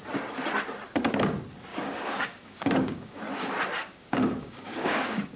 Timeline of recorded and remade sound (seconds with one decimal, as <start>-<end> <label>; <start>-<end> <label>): 0.0-1.7 recorded; 1.7-3.2 remade; 3.2-3.8 recorded; 3.8-5.4 remade